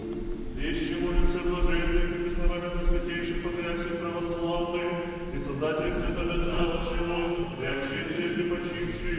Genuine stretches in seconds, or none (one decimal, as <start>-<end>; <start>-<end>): 0.0-6.5; 8.0-9.2